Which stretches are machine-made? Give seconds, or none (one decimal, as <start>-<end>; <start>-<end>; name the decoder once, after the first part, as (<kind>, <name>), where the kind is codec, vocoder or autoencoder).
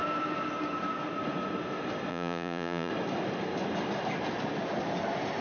2.1-2.9 (vocoder, Vocos)